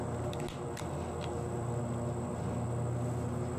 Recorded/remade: recorded